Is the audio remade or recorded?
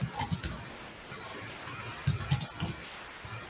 recorded